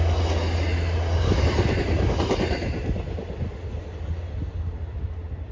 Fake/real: real